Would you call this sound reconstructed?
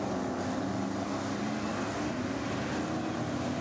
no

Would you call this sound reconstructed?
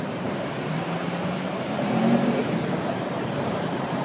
yes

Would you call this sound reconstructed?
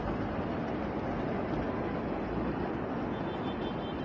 yes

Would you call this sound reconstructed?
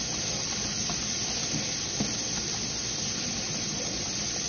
yes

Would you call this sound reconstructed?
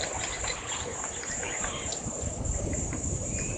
yes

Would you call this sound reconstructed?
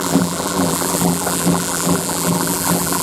yes